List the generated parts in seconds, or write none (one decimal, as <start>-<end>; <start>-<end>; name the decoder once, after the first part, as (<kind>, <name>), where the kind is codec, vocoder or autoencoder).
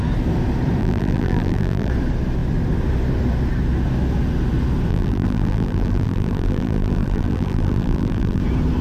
0.8-1.9 (vocoder, BigVGAN v2); 4.9-8.4